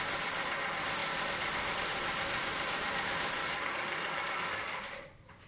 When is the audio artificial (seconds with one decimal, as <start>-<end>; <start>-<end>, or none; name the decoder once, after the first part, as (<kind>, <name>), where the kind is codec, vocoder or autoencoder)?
3.4-4.8 (codec, DAC)

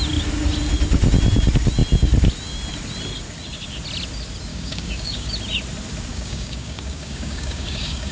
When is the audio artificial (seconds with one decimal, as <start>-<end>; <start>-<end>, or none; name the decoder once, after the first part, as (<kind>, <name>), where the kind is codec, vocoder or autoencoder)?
4.5-5.3 (codec, DAC); 6.1-8.1

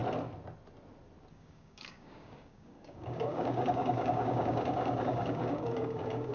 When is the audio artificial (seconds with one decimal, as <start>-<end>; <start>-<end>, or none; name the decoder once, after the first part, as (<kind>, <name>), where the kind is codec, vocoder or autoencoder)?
1.3-6.3 (codec, DAC)

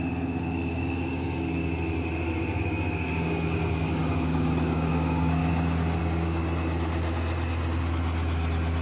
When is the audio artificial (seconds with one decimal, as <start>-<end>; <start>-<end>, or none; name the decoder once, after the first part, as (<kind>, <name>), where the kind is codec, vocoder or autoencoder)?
0.0-1.6 (codec, DAC); 2.6-5.4; 6.0-6.4

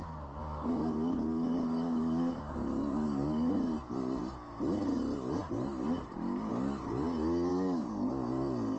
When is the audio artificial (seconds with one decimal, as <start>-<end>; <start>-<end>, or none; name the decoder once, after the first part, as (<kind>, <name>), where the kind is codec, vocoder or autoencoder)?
0.4-3.5 (codec, DAC); 7.5-8.1